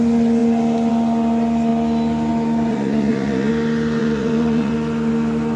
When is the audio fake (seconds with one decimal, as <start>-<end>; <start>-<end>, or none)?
2.7-3.5; 4.0-4.7